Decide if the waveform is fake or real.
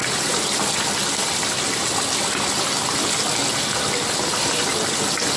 real